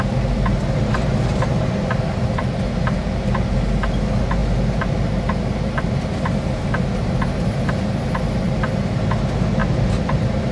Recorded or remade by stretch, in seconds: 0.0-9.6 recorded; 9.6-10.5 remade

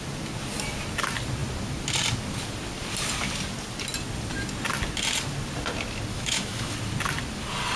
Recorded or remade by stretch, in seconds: 0.0-6.1 recorded; 6.1-6.7 remade; 6.7-7.8 recorded

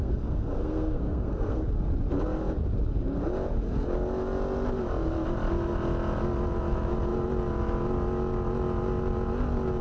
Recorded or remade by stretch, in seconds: 0.0-1.6 remade; 1.6-9.8 recorded

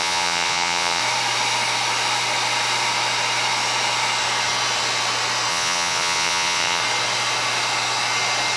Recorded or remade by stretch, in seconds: 0.0-1.0 remade; 1.0-5.5 recorded; 5.5-6.8 remade; 6.8-8.6 recorded

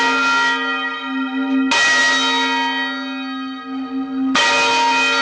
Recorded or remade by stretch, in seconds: 0.0-5.2 recorded

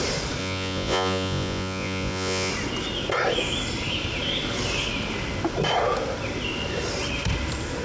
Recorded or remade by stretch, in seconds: 0.0-0.4 recorded; 0.4-2.5 remade; 2.5-7.8 recorded

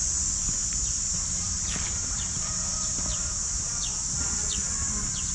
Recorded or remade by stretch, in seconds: 0.0-0.6 recorded; 0.6-3.8 remade; 3.8-5.3 recorded

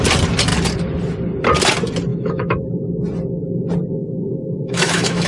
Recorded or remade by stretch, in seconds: 0.0-2.1 recorded; 2.1-2.7 remade; 2.7-4.0 recorded; 4.0-5.3 remade